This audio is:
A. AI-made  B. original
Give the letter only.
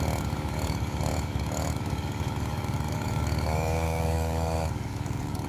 A